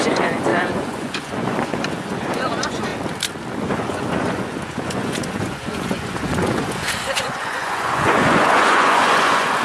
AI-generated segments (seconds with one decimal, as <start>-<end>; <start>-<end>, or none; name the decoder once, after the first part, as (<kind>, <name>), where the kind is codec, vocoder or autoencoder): 0.0-2.9 (vocoder, Vocos); 3.6-9.6